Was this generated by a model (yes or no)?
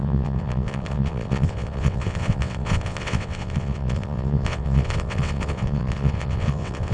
yes